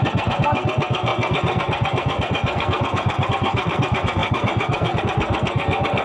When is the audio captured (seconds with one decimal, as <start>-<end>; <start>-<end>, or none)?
none